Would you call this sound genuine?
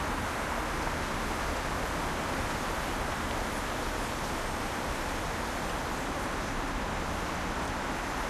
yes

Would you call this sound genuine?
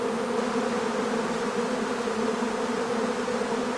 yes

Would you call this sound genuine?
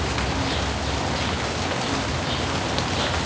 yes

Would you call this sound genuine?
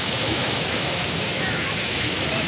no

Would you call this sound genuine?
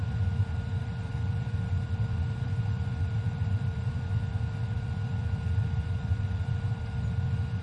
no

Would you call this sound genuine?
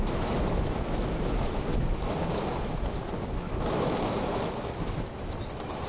no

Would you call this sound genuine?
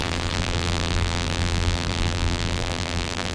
no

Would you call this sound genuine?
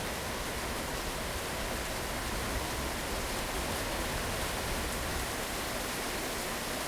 yes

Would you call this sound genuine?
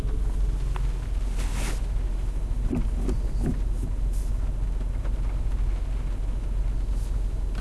yes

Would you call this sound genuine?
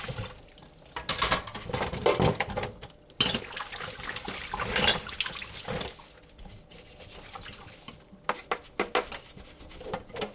yes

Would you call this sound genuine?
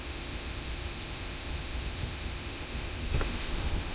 no